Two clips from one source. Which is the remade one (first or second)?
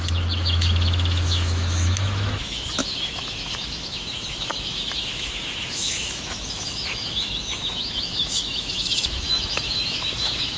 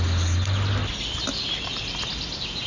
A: first